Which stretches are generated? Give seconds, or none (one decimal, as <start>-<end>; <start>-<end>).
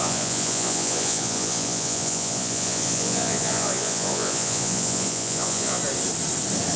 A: 0.0-5.8